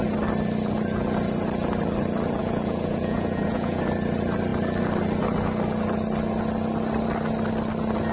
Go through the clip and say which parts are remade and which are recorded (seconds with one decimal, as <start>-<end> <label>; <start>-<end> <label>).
0.0-2.4 recorded; 2.4-3.8 remade; 3.8-8.1 recorded